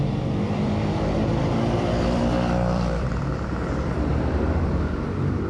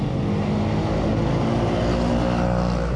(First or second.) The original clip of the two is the second